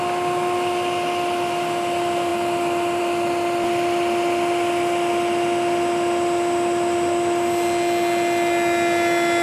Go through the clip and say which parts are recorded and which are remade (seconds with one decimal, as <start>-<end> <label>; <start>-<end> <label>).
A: 0.0-9.4 recorded

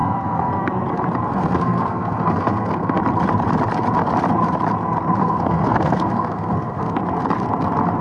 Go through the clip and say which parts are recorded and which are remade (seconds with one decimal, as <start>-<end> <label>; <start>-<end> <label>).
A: 0.0-0.5 remade; 0.5-1.3 recorded; 1.3-3.0 remade; 3.0-5.2 recorded; 5.2-7.0 remade; 7.0-8.0 recorded

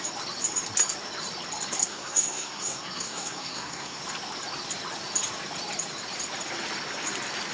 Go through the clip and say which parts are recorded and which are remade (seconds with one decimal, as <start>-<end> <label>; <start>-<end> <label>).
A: 0.0-1.8 recorded; 1.8-4.0 remade; 4.0-7.5 recorded

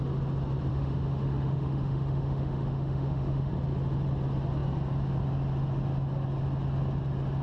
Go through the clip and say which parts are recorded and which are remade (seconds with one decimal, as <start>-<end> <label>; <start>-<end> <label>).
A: 0.0-0.7 recorded; 0.7-3.5 remade; 3.5-7.4 recorded

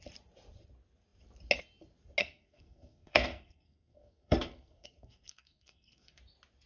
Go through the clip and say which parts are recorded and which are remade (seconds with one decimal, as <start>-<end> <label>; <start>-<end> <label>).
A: 0.0-2.2 recorded; 2.2-6.2 remade; 6.2-6.7 recorded

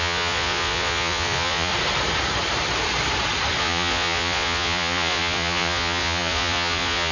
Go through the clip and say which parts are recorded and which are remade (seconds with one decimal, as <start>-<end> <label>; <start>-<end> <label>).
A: 0.0-1.7 remade; 1.7-3.6 recorded; 3.6-7.1 remade

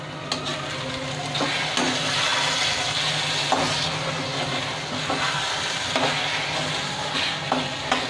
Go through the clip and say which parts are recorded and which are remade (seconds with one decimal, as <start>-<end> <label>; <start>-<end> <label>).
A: 0.0-8.1 recorded

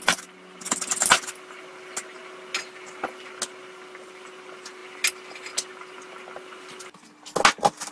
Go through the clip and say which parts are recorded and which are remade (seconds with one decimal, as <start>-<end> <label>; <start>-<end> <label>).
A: 0.0-7.9 recorded